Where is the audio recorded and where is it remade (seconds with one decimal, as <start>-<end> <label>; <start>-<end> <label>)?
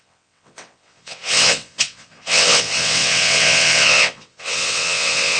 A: 0.0-5.4 remade